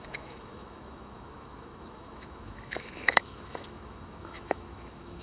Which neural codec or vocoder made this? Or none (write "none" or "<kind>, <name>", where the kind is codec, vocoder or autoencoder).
autoencoder, DAC-VAE